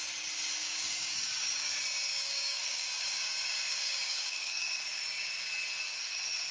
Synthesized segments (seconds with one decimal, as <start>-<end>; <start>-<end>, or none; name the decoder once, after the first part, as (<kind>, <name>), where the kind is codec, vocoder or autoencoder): 0.6-1.7 (codec, DAC); 2.1-5.0